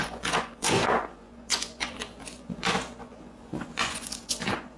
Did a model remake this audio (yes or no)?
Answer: yes